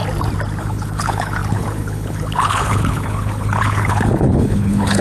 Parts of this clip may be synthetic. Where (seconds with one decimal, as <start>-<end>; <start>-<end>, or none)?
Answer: 0.6-5.0

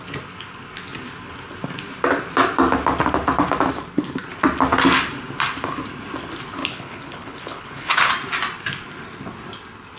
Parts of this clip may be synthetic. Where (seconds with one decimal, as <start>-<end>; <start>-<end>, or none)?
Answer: 6.6-8.1

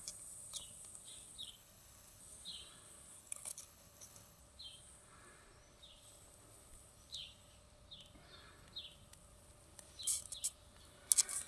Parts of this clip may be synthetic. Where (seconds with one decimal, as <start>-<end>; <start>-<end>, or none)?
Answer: 1.4-2.2; 3.2-4.4

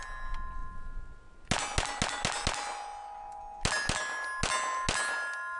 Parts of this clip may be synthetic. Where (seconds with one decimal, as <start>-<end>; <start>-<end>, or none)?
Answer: none

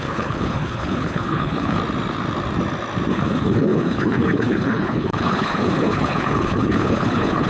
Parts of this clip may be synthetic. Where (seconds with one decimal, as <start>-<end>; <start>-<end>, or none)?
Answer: 0.0-1.8; 3.1-7.5

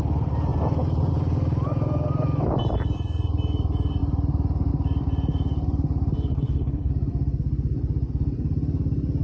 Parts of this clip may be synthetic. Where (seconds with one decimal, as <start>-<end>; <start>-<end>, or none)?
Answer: 6.3-6.9

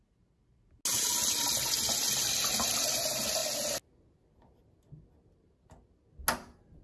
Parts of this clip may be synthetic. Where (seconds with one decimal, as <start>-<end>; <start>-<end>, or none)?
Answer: none

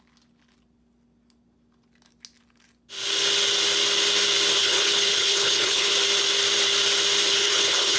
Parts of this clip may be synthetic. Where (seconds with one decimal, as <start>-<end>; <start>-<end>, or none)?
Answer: 4.6-5.9; 7.3-8.0